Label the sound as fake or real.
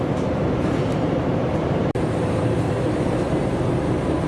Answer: fake